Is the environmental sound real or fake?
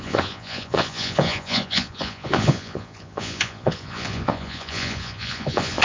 fake